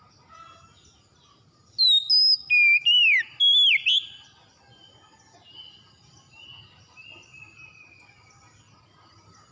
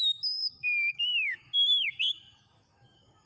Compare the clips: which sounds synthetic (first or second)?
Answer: second